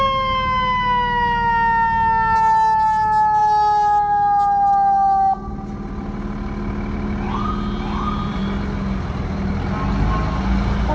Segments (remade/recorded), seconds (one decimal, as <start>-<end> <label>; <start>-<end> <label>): 0.0-10.9 recorded